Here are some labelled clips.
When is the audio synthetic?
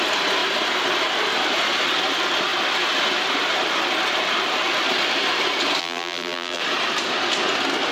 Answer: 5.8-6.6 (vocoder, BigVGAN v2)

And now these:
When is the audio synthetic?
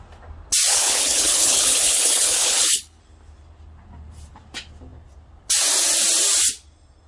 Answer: 0.7-3.0 (codec, HILCodec)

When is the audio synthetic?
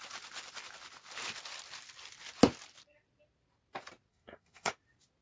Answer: 4.1-4.7 (codec, SNAC)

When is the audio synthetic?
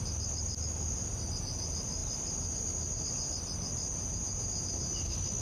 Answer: none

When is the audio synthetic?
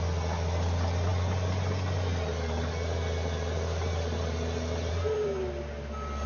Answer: none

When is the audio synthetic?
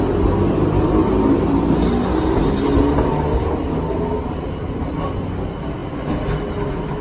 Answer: none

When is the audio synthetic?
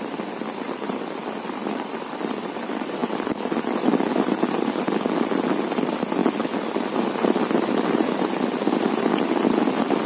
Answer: 0.0-3.0 (vocoder, BigVGAN v2); 5.4-6.2; 7.9-10.1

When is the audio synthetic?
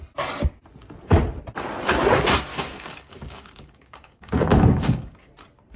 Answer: 2.5-5.3 (codec, DAC)